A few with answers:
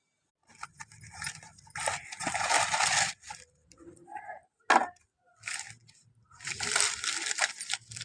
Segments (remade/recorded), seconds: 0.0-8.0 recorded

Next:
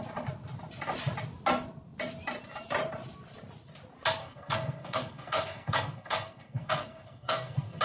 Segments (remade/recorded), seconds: 0.0-4.2 recorded; 4.2-7.8 remade

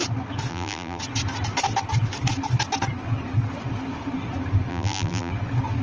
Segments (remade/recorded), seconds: 0.0-0.5 recorded; 0.5-1.0 remade; 1.0-4.7 recorded; 4.7-5.3 remade; 5.3-5.8 recorded

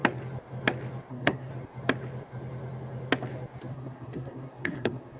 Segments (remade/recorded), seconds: 0.0-1.1 recorded; 1.1-1.5 remade; 1.5-3.7 recorded; 3.7-5.2 remade